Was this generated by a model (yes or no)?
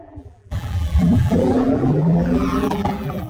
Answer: yes